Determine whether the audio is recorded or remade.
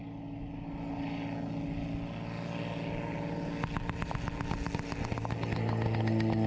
recorded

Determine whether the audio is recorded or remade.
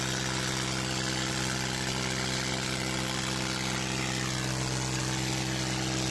recorded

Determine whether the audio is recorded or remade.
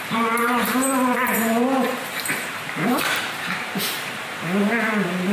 remade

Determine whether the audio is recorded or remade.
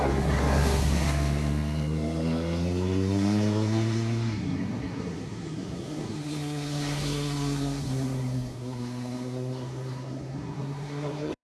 remade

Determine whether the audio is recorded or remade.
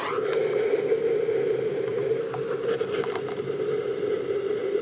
recorded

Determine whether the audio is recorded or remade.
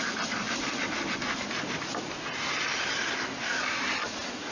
recorded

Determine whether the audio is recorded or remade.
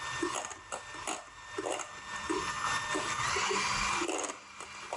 recorded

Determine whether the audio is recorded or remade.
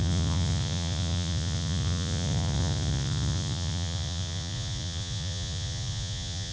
remade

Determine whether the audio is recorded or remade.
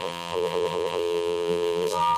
remade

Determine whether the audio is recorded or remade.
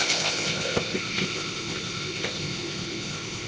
remade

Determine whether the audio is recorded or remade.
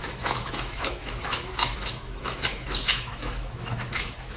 remade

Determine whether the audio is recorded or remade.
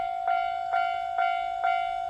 recorded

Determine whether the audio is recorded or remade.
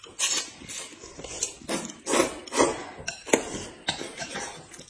recorded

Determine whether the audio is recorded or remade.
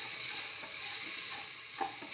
remade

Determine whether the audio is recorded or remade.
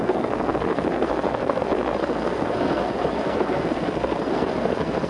remade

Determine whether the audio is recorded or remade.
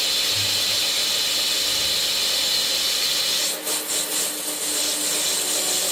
recorded